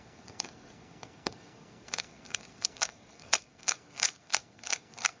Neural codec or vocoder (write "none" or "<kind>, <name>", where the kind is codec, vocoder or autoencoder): codec, SNAC